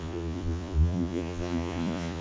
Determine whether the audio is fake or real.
fake